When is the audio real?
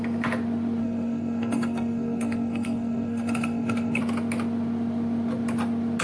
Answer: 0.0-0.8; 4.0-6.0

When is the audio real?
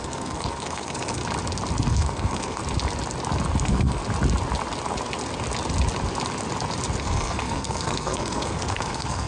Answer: 1.2-1.9; 2.6-3.6; 4.0-7.0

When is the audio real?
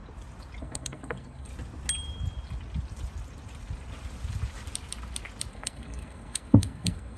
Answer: 0.0-0.6; 1.5-5.5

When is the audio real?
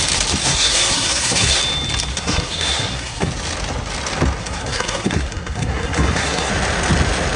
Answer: 0.0-0.4; 1.6-2.1; 3.3-4.4; 6.5-7.4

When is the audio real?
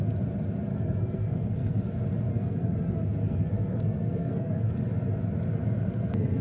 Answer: 0.0-0.7; 1.9-2.3; 4.7-6.4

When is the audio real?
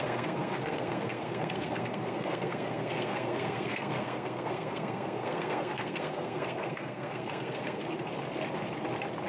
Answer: 7.8-9.3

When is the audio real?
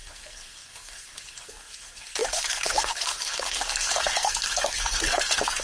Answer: none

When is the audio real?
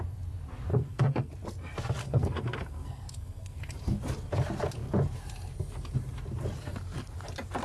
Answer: 0.0-0.7; 1.3-2.0; 3.6-7.6